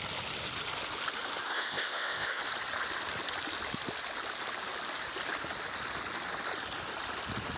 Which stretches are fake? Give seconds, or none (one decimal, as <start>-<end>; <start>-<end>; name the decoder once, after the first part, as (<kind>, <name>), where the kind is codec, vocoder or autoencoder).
1.4-2.4 (codec, ZipCodec)